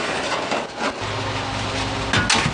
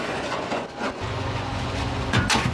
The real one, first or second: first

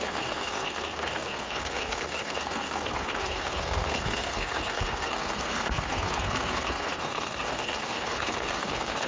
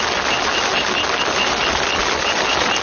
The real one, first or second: second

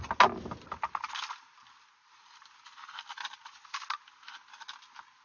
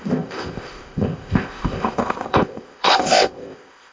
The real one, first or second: first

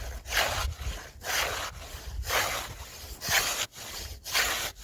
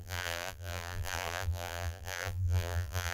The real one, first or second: first